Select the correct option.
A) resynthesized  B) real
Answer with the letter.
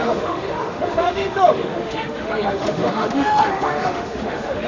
A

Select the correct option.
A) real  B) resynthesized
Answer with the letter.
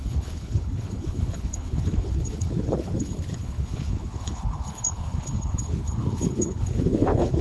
B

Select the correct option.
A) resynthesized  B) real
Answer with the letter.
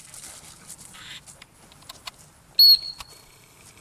B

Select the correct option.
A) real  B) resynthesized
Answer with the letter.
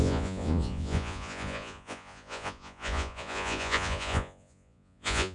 B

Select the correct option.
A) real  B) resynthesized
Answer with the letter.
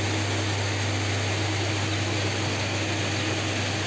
A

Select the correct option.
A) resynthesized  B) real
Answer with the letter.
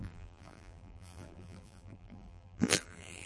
A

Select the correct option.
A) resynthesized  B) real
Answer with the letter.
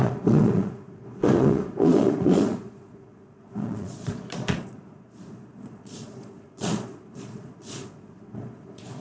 A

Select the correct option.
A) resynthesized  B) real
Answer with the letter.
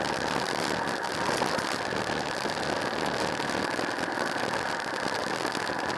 B